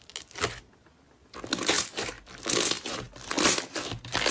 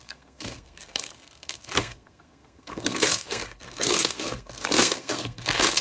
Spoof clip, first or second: second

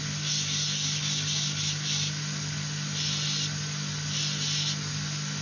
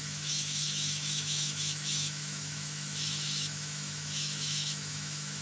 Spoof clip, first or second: second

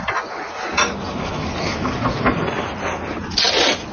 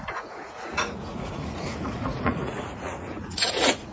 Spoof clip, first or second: second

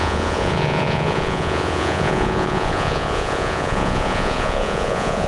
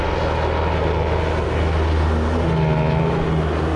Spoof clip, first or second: first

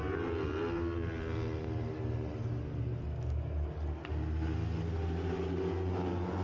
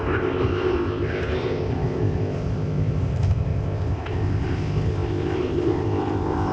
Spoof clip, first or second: second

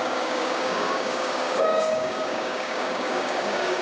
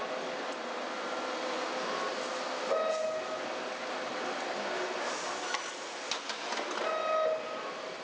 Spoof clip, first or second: first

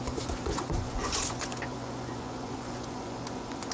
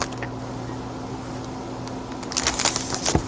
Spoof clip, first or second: first